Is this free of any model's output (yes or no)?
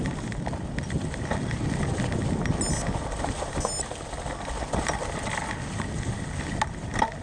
yes